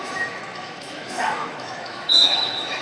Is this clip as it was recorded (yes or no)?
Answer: no